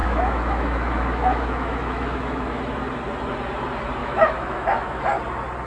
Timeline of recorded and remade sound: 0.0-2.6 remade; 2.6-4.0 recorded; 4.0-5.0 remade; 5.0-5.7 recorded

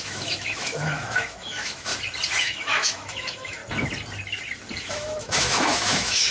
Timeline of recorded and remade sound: 0.0-1.9 remade; 1.9-2.4 recorded; 2.4-3.6 remade; 3.6-4.8 recorded; 4.8-6.3 remade

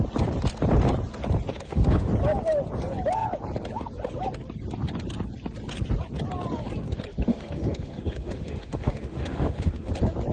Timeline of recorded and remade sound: 0.0-1.5 recorded; 1.5-2.1 remade; 2.1-7.3 recorded; 7.3-9.9 remade; 9.9-10.3 recorded

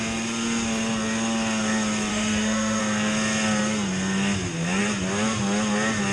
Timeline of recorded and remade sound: 0.0-2.1 recorded; 2.1-2.8 remade; 2.8-6.1 recorded

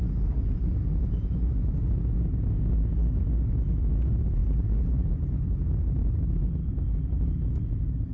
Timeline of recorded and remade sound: 0.0-8.1 recorded

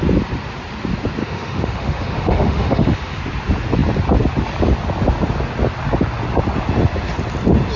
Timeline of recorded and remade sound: 0.0-1.2 recorded; 1.2-3.2 remade; 3.2-7.8 recorded